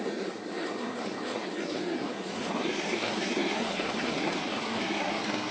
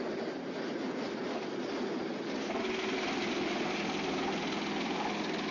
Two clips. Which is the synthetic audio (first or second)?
first